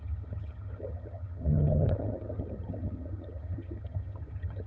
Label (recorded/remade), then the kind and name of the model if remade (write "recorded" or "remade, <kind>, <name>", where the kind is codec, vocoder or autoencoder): remade, vocoder, HiFi-GAN